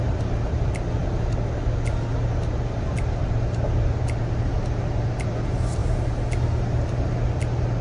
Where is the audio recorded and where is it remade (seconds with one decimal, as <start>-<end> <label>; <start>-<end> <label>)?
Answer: 0.0-7.8 recorded